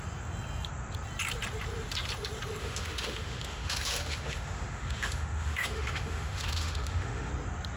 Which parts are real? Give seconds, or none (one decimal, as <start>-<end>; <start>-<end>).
0.0-2.6; 7.3-7.8